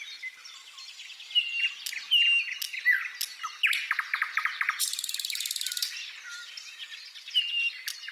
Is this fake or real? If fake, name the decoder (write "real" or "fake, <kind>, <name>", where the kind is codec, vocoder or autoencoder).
real